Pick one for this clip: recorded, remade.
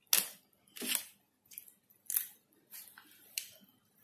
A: recorded